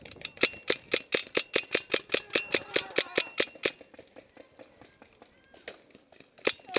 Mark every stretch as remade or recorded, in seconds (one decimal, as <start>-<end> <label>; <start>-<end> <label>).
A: 0.0-6.8 recorded